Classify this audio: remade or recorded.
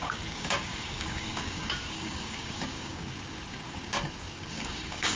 remade